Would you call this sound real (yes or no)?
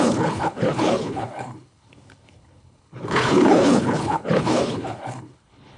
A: no